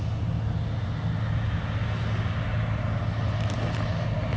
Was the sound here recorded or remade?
recorded